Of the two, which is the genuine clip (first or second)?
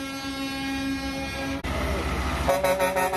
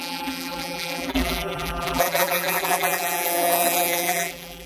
first